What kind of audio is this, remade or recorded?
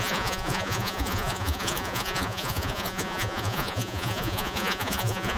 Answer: remade